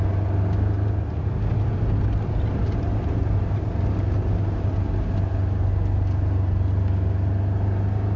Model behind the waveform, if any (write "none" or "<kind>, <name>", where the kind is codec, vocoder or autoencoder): none